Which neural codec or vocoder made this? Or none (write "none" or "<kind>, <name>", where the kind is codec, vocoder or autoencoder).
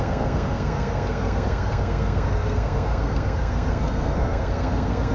codec, SNAC